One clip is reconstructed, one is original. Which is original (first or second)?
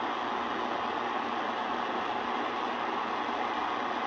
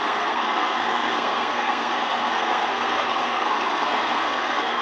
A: first